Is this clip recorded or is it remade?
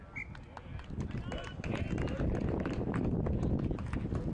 recorded